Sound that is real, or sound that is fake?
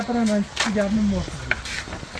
real